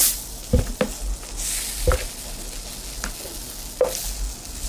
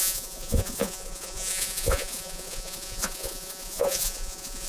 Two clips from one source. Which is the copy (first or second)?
second